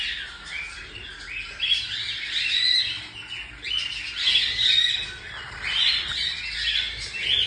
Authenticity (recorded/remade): recorded